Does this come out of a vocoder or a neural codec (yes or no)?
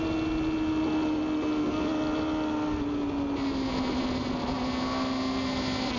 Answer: no